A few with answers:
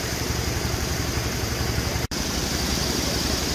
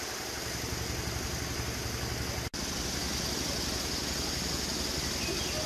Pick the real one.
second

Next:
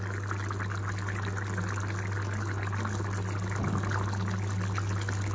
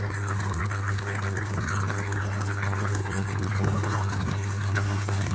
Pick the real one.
first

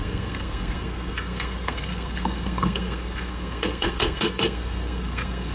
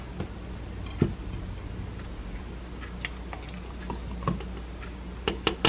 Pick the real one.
second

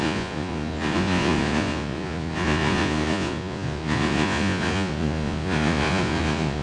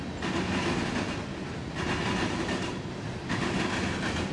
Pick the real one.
second